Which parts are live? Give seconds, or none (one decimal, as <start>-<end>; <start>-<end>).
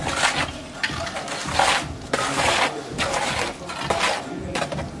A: 0.0-5.0